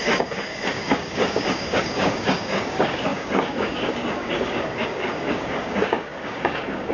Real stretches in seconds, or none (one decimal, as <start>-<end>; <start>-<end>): none